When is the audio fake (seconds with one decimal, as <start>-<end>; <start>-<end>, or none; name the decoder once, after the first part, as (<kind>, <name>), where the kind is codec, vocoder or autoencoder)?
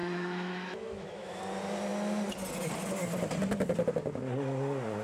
0.0-1.4 (autoencoder, DAC-VAE)